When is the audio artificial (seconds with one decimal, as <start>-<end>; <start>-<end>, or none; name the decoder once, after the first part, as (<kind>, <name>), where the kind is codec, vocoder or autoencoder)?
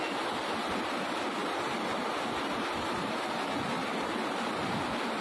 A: 1.4-4.5 (vocoder, BigVGAN v2)